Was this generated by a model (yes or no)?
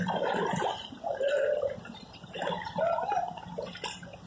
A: yes